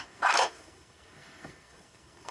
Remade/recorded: remade